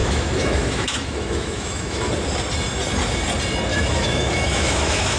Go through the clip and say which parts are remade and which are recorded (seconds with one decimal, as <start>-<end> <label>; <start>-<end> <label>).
0.0-2.1 remade; 2.1-3.7 recorded; 3.7-5.2 remade